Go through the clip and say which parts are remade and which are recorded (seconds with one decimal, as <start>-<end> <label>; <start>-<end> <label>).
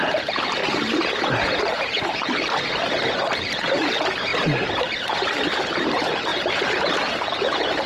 0.0-0.6 recorded; 0.6-3.1 remade; 3.1-4.3 recorded; 4.3-4.8 remade; 4.8-6.3 recorded; 6.3-6.9 remade; 6.9-7.9 recorded